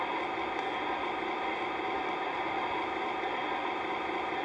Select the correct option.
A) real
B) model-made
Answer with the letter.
A